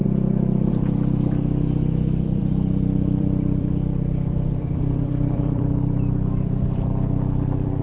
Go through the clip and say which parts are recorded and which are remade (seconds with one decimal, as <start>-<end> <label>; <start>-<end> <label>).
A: 0.0-7.8 remade